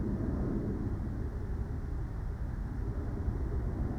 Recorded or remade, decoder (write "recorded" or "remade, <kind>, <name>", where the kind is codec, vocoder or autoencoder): recorded